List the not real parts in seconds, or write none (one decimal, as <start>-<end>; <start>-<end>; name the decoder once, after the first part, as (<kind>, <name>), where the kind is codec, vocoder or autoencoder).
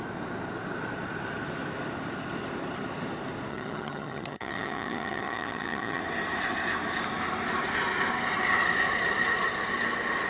3.5-6.0 (vocoder, HiFi-GAN)